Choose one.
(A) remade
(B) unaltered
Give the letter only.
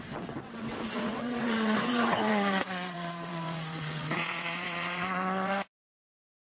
A